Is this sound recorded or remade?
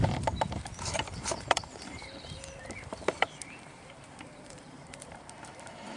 remade